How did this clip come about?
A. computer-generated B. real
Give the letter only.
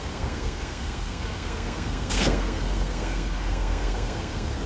A